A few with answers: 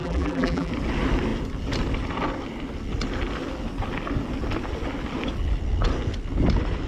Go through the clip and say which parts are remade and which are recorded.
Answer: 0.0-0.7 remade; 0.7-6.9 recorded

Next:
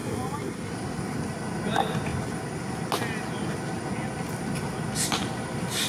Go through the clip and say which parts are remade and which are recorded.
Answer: 0.0-0.7 remade; 0.7-5.9 recorded

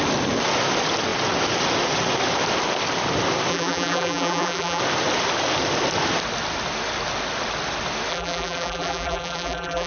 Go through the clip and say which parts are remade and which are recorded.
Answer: 0.0-3.5 recorded; 3.5-4.8 remade; 4.8-8.1 recorded; 8.1-9.9 remade

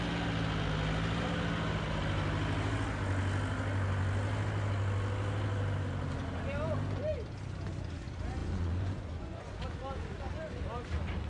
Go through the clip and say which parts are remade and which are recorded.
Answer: 0.0-8.4 recorded; 8.4-9.6 remade; 9.6-11.3 recorded

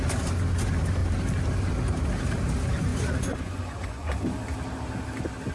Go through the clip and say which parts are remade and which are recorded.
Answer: 0.0-2.9 recorded; 2.9-4.1 remade; 4.1-5.5 recorded

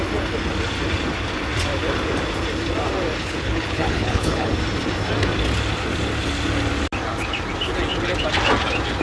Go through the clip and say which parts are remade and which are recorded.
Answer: 0.0-3.2 recorded; 3.2-4.5 remade; 4.5-9.0 recorded

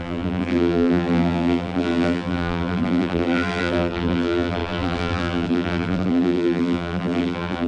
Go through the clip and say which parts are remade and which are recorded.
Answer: 0.0-7.7 remade